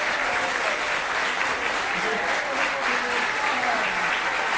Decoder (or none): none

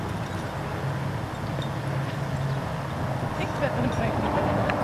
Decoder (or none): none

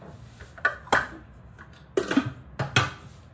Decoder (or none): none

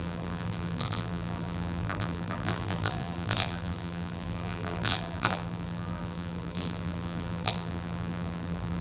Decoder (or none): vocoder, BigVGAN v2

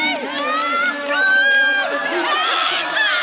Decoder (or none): none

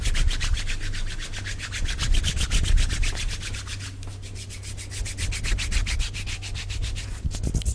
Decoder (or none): none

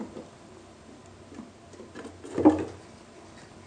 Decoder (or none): none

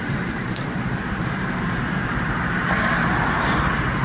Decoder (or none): vocoder, BigVGAN v2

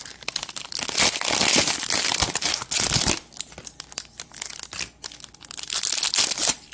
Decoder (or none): none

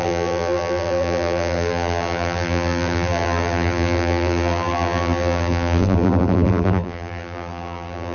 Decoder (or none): vocoder, BigVGAN v2